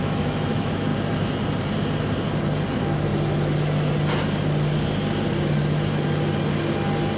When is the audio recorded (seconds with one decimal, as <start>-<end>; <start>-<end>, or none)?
0.9-2.7; 3.1-7.2